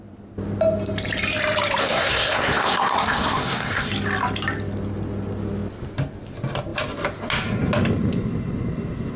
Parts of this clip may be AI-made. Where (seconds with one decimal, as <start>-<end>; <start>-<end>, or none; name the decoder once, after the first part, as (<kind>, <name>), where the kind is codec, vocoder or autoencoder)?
1.8-3.9 (codec, SNAC)